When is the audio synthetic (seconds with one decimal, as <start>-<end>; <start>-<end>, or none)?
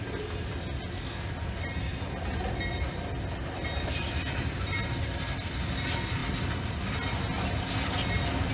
none